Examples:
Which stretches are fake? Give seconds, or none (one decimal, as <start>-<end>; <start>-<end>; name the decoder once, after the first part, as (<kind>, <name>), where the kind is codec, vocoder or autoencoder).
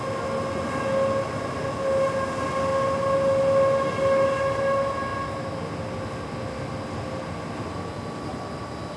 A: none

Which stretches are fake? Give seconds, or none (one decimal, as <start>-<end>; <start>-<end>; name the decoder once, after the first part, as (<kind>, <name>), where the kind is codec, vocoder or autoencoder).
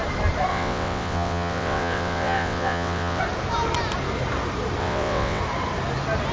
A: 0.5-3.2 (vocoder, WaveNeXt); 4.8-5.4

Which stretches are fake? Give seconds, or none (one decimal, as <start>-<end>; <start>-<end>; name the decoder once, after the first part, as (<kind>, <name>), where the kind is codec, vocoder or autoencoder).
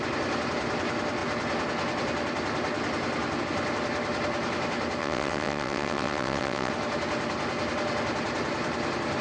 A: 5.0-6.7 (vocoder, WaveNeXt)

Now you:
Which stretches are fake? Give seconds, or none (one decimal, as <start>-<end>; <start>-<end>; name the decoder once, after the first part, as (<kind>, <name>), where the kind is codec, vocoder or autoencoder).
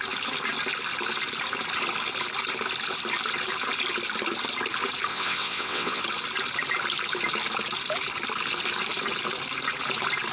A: 5.1-6.0 (vocoder, WaveNeXt)